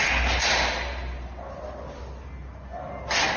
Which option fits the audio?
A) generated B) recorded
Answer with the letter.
B